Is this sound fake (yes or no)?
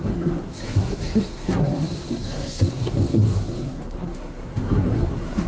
yes